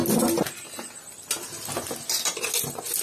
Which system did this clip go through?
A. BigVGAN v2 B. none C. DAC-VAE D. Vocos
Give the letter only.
B